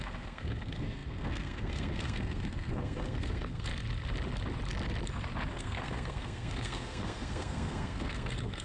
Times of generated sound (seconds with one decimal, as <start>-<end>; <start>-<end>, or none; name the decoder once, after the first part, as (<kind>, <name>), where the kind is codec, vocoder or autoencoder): 0.0-3.7 (codec, SNAC); 5.5-8.6

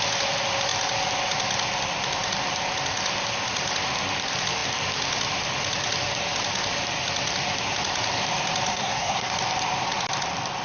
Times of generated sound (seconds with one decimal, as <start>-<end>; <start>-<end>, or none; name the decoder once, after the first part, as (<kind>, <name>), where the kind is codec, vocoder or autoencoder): 8.7-9.3 (codec, SNAC)

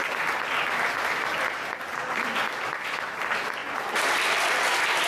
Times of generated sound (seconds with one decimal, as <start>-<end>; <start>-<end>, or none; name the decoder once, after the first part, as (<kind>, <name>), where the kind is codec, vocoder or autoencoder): none

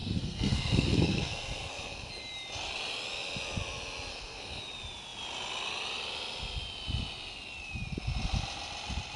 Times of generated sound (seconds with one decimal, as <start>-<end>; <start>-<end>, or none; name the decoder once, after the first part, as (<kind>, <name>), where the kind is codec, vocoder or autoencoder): 0.0-2.1 (codec, SNAC); 4.1-4.6

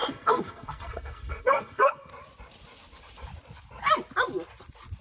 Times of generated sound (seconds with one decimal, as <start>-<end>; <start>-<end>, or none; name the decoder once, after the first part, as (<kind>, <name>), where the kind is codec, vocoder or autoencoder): 0.0-2.1 (codec, SNAC)

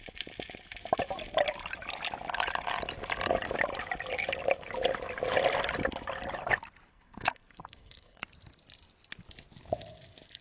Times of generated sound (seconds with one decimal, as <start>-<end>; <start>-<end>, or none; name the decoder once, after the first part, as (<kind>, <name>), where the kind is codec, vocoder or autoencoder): 6.9-8.2 (codec, SNAC)

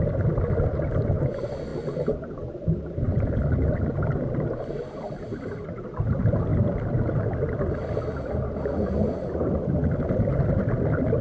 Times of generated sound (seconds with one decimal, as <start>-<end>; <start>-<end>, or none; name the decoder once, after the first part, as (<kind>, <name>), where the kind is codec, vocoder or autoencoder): none

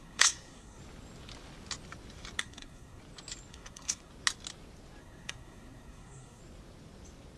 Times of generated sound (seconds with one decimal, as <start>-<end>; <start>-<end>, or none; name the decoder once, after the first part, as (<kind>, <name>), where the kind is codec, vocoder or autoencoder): 0.0-0.8 (codec, SNAC); 2.4-3.0; 3.5-4.1; 5.0-6.4